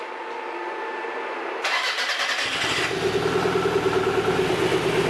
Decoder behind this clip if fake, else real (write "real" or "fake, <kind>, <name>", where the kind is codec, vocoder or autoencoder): real